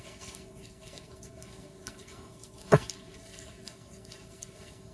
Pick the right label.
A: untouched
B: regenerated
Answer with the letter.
B